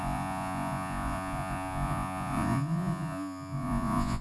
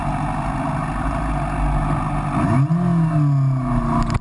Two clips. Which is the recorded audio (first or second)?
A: second